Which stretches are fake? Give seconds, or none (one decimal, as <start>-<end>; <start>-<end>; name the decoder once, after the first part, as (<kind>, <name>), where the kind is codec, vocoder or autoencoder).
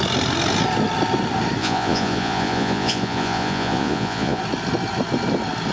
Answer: 1.6-4.4 (vocoder, Vocos)